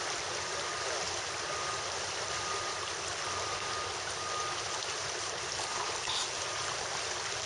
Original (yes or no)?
yes